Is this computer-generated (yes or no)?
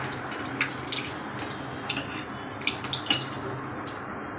no